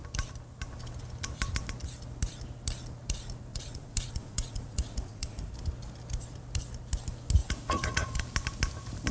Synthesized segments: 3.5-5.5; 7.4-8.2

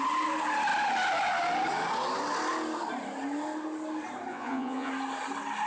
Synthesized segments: 4.3-4.9

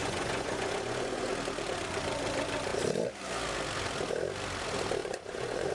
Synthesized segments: 0.0-1.3; 5.0-5.7